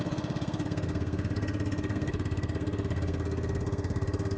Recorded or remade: remade